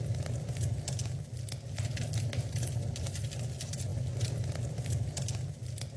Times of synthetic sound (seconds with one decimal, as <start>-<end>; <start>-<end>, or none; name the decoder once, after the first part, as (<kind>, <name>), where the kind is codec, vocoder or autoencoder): none